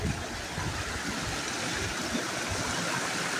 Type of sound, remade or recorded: recorded